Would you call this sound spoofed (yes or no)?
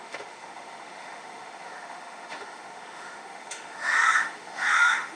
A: yes